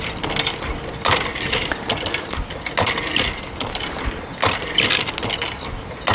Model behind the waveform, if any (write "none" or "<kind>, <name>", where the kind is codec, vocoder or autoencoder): none